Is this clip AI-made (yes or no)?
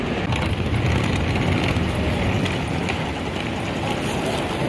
no